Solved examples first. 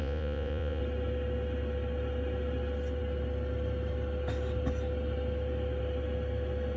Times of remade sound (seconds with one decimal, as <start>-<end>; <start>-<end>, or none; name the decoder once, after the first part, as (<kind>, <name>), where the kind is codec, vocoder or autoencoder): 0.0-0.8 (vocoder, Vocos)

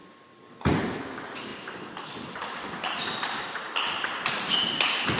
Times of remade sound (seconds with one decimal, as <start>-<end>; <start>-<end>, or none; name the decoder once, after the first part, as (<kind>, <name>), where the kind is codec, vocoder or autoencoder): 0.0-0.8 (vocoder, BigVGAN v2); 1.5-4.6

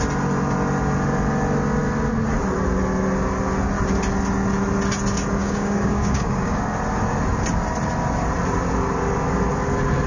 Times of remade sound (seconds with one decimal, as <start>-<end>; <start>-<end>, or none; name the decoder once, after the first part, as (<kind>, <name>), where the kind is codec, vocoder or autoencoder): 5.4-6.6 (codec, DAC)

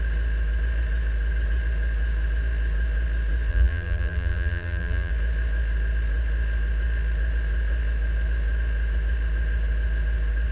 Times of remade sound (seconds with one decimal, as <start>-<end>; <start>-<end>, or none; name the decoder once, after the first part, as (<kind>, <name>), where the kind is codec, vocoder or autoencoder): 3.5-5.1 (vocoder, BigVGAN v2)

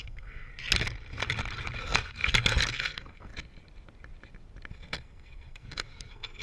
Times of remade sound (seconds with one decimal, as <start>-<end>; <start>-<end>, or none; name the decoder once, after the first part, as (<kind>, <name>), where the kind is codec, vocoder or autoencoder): 0.0-0.5 (codec, SNAC); 1.8-2.2; 2.7-3.3; 4.7-6.4

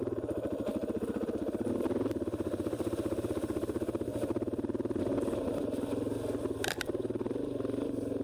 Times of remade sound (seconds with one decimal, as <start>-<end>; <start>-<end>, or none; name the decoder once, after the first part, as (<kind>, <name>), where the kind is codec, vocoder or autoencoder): none